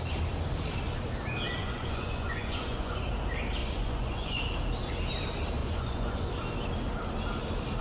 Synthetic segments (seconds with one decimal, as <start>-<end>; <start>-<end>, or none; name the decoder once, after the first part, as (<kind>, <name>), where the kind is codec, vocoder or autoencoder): 1.6-3.0 (vocoder, Vocos); 3.6-4.4; 5.6-6.3